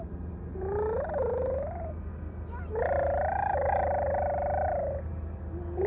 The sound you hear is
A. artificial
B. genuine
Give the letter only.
B